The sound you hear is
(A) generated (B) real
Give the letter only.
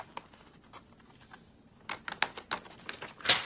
B